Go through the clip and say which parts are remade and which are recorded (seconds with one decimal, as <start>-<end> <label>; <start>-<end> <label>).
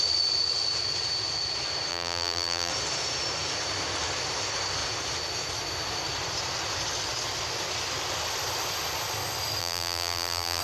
0.0-1.9 recorded; 1.9-2.7 remade; 2.7-9.6 recorded; 9.6-10.6 remade